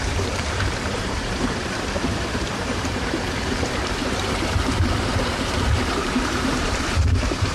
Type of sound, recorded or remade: remade